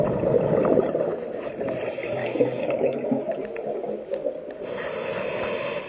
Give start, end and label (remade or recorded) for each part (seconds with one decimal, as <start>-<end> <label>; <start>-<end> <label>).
0.0-2.2 recorded; 2.2-3.3 remade; 3.3-5.9 recorded